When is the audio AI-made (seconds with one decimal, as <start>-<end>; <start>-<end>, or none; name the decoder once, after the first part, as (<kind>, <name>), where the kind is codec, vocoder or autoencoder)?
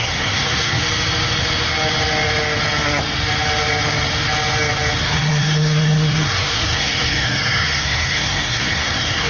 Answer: 0.0-0.8 (codec, SNAC); 5.0-9.3